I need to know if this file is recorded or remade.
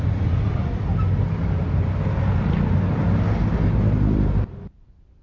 recorded